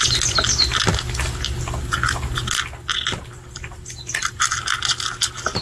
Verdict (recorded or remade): recorded